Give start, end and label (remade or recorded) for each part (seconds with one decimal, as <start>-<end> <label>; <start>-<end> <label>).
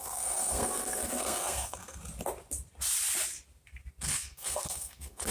0.0-2.0 remade; 2.0-4.0 recorded; 4.0-5.3 remade